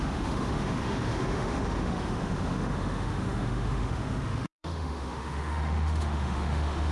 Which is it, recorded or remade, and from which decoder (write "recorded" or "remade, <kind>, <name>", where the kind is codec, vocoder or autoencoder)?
remade, autoencoder, DAC-VAE